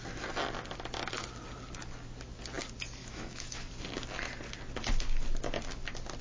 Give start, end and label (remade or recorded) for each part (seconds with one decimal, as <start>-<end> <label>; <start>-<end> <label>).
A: 0.0-3.0 recorded; 3.0-3.7 remade; 3.7-6.2 recorded